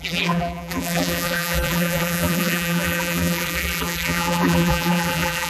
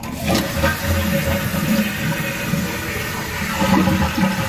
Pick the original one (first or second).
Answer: second